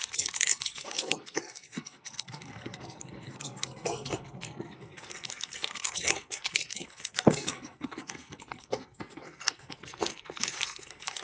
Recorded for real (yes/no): no